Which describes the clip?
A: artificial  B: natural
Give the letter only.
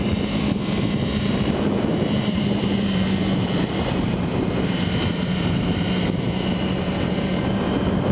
A